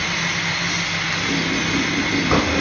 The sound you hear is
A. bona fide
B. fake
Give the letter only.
A